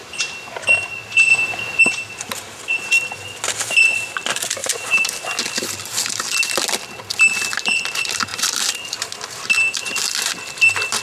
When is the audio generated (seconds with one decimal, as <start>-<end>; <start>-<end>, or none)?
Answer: 4.6-5.1; 8.3-9.1